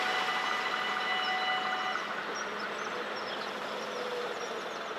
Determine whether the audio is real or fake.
real